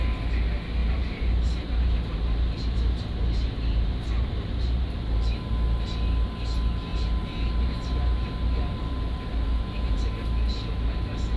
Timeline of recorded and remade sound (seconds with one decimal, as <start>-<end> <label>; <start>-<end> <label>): 0.0-0.8 recorded; 0.8-5.5 remade; 5.5-6.9 recorded; 6.9-10.0 remade; 10.0-11.4 recorded